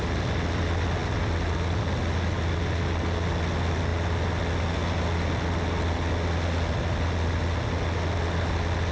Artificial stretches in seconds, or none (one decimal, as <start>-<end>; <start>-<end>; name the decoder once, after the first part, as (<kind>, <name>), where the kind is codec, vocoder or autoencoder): none